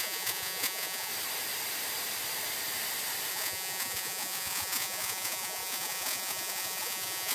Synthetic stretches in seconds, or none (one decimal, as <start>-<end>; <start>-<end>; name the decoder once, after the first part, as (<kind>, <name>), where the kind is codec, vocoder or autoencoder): 0.0-1.1 (vocoder, Vocos); 3.3-7.3